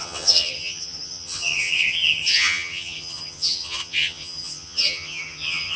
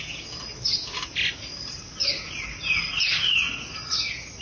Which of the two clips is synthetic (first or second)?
first